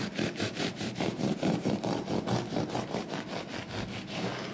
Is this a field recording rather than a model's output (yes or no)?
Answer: yes